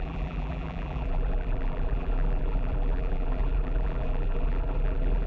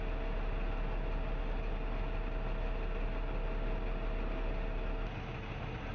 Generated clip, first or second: first